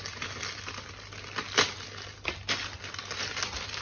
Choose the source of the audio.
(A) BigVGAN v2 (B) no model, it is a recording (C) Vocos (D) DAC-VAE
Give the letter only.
B